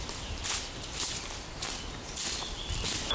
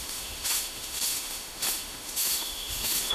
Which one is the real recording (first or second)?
first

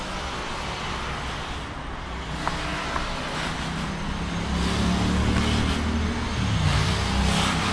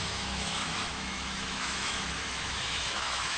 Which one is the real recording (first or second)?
first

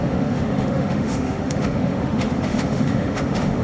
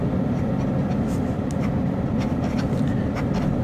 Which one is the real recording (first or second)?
second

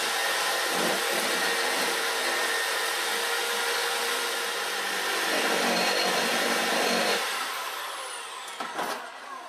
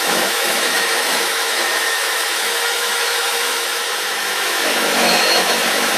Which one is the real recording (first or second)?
first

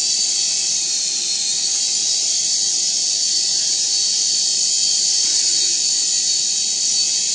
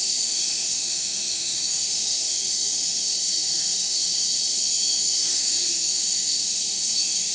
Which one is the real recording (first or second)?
first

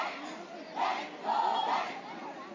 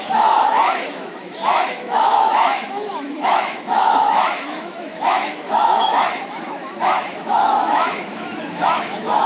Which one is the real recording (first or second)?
first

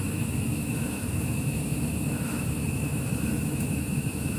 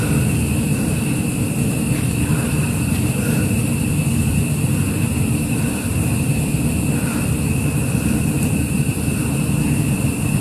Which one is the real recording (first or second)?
second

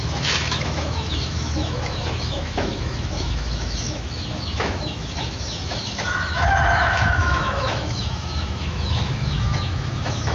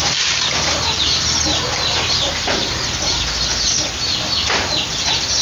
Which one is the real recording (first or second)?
second